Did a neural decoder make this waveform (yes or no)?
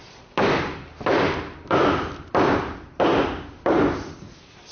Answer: yes